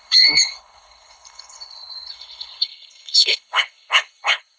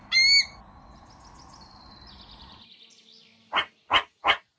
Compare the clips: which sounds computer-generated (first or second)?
first